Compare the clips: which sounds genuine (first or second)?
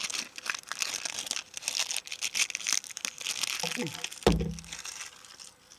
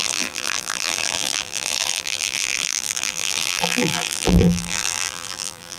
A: first